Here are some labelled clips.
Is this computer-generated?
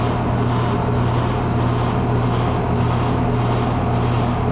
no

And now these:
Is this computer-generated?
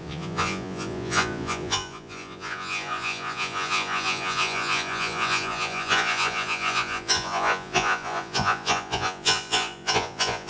yes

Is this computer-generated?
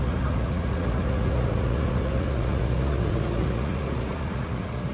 yes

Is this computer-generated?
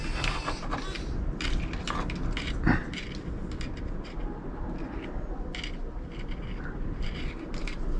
no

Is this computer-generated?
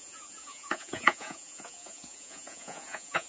yes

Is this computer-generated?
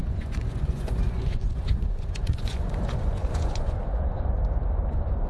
yes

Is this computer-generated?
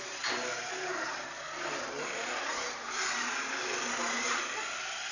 no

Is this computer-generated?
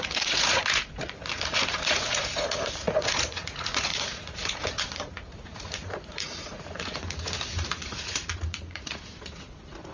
yes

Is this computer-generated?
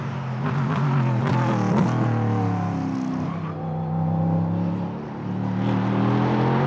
no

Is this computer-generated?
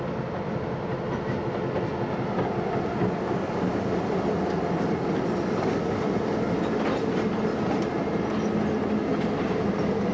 no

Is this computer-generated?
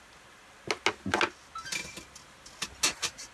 no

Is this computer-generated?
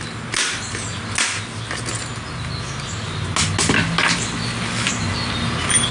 no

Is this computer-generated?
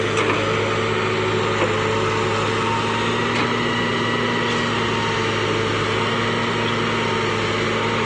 no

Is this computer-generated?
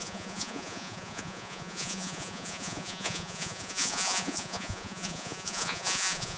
yes